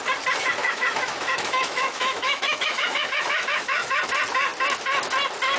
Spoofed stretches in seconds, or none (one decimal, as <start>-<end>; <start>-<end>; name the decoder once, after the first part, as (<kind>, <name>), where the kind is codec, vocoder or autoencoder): 0.6-4.0 (autoencoder, DAC-VAE)